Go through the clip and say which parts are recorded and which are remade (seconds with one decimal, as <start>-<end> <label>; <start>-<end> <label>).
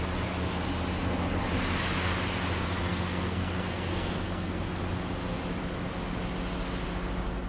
0.0-2.9 recorded; 2.9-4.7 remade; 4.7-7.5 recorded